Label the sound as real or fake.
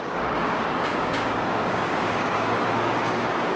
fake